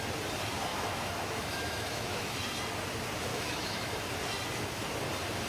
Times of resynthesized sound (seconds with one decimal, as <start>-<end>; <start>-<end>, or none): 0.7-2.4; 3.3-3.9